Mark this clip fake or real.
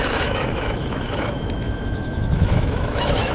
fake